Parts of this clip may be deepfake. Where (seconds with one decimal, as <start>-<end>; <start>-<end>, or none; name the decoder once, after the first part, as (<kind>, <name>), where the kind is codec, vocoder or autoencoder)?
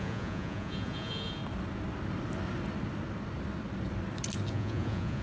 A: 0.0-1.4 (vocoder, Vocos); 4.5-5.2